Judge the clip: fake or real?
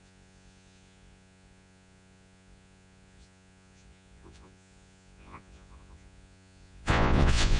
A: fake